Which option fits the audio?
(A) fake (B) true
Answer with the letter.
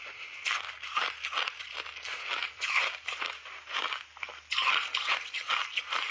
B